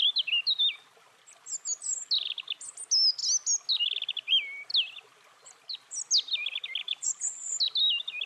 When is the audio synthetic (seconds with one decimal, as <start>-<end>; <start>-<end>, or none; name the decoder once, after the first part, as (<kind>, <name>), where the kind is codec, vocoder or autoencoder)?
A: 6.8-7.6 (vocoder, BigVGAN v2)